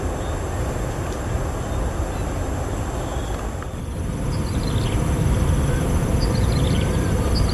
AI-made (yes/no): no